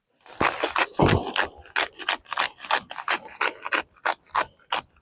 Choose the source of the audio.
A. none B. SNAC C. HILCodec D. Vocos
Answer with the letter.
A